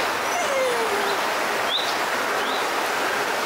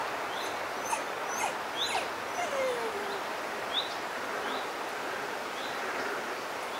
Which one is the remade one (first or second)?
second